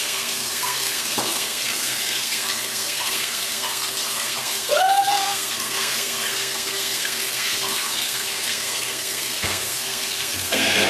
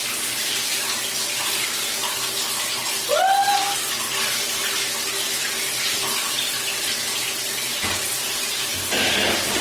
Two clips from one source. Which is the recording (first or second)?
second